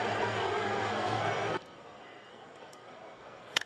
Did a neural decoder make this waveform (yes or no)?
yes